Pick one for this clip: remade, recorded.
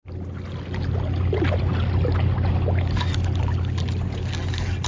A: recorded